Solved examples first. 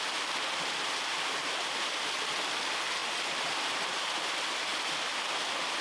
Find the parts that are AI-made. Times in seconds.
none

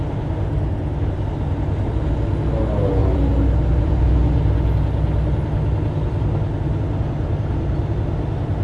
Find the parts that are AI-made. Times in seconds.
3.0-4.0 (vocoder, BigVGAN v2)